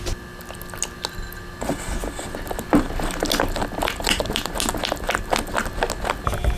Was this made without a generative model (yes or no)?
yes